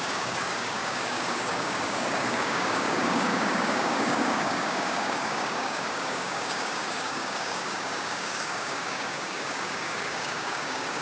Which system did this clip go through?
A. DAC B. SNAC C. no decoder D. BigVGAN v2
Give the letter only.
A